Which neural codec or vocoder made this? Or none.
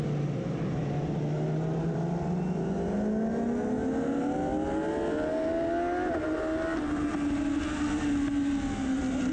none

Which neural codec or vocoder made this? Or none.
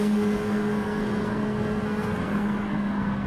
codec, SNAC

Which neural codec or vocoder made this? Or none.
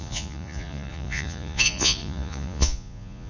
vocoder, Vocos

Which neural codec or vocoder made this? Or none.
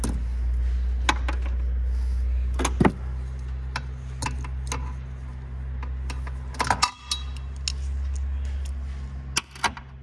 none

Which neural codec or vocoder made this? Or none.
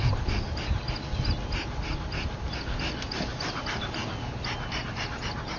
none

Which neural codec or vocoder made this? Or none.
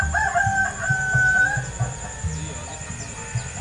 none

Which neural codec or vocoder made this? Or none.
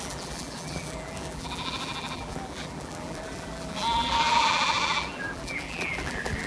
vocoder, BigVGAN v2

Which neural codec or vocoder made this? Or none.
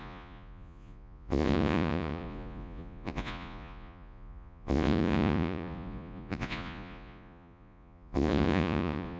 vocoder, Vocos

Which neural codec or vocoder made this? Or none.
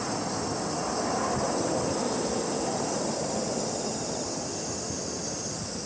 none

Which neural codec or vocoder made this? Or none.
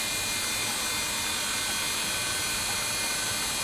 none